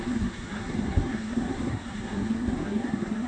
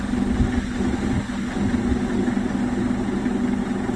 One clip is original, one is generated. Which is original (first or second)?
second